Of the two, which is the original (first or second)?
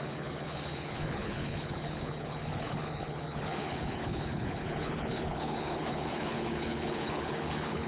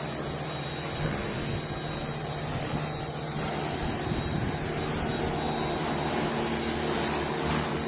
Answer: second